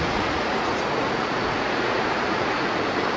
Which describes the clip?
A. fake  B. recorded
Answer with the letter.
A